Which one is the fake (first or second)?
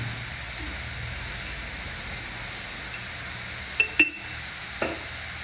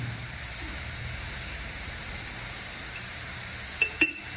second